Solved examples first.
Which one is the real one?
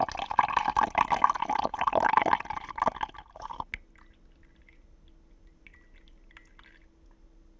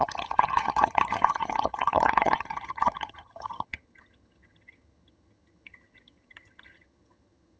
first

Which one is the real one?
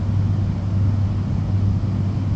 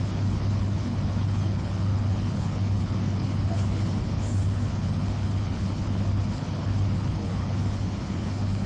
first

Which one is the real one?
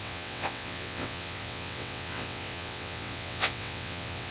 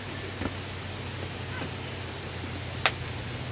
second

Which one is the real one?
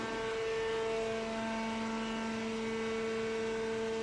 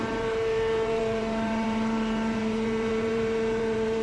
first